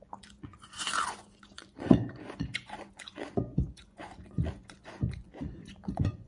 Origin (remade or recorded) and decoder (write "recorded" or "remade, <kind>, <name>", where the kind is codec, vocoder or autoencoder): remade, vocoder, Vocos